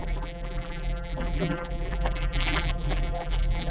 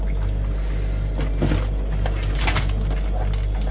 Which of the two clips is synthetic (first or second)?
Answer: first